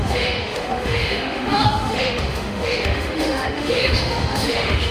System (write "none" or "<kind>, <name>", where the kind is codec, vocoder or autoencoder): autoencoder, DAC-VAE